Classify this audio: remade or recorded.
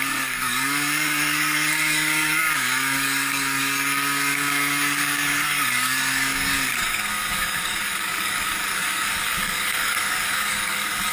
remade